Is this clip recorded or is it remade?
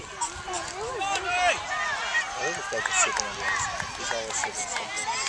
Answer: recorded